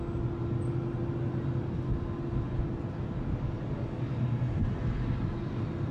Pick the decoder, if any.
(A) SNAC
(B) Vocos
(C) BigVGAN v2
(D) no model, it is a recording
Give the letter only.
D